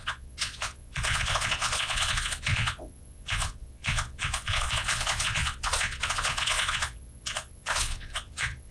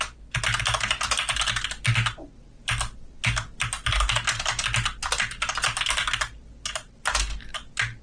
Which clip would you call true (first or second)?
second